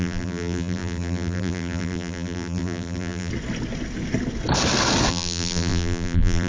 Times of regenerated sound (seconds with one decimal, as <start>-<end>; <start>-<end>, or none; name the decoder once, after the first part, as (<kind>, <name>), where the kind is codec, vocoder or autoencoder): 0.0-3.3 (vocoder, BigVGAN v2); 5.1-6.5